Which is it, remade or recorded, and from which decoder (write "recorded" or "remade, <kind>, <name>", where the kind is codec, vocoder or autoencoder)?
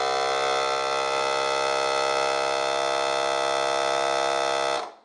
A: recorded